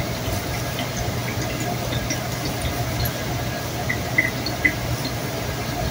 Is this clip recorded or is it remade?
recorded